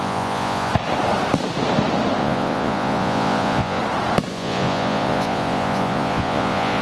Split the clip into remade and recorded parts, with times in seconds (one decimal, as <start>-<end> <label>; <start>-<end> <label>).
0.0-0.7 remade; 0.7-2.2 recorded; 2.2-3.8 remade; 3.8-4.3 recorded; 4.3-6.8 remade